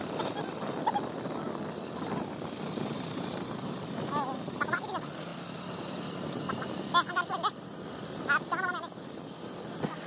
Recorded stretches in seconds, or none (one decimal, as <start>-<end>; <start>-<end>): 0.0-10.1